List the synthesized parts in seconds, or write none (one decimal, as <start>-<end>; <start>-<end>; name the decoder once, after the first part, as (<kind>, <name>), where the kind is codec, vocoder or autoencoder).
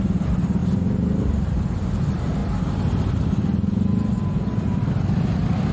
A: none